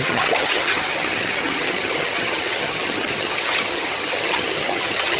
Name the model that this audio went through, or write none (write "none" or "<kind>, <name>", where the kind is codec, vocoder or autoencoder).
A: vocoder, HiFi-GAN